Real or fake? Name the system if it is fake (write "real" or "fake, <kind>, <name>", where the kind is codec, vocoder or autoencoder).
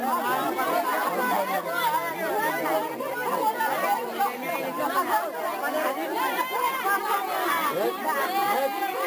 real